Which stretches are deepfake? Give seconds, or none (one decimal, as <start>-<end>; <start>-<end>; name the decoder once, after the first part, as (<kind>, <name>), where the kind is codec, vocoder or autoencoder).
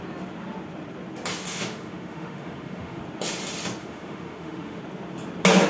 1.5-3.0 (autoencoder, DAC-VAE); 3.8-4.8